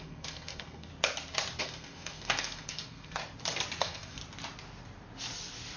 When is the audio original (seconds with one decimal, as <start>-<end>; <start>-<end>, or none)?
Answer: 0.9-1.6; 3.2-3.8; 4.2-5.8